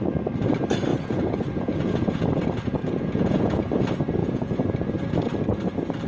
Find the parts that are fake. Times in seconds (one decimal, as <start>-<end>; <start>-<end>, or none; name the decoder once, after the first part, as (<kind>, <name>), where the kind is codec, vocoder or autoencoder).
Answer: 0.9-2.1 (vocoder, Vocos); 2.8-3.7; 4.2-4.7

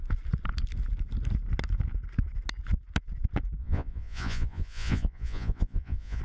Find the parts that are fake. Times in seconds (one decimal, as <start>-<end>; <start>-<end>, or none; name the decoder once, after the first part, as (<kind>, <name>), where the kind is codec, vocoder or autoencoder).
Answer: 3.6-6.2 (vocoder, Vocos)

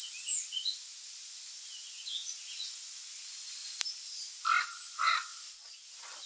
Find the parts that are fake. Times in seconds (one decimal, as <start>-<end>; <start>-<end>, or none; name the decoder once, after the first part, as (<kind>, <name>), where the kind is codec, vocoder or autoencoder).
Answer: 0.0-3.6 (vocoder, Vocos); 4.6-5.3

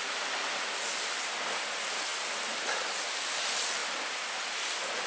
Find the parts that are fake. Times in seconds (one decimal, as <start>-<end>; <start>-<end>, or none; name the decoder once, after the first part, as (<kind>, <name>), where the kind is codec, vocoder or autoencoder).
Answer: none